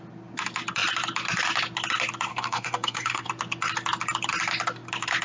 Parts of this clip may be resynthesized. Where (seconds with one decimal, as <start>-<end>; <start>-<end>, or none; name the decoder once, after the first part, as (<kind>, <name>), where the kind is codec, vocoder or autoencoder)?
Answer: 2.3-3.3 (codec, SNAC)